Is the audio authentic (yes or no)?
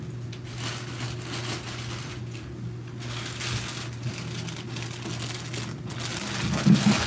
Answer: yes